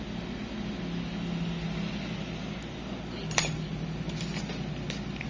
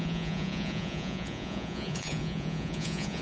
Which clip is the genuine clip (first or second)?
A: first